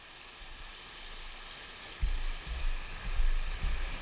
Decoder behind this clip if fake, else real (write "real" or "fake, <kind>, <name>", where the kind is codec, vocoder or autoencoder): real